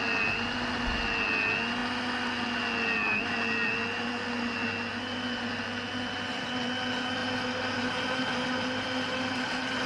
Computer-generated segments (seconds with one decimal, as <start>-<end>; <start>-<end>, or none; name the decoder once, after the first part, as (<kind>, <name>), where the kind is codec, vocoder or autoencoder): none